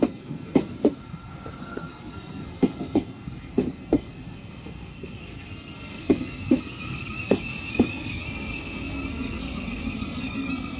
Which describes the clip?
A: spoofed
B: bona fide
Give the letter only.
A